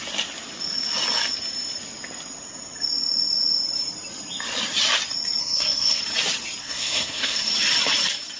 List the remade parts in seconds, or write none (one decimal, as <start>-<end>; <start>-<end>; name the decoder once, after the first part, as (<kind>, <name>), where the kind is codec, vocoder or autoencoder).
5.4-6.0 (codec, SNAC); 6.6-7.5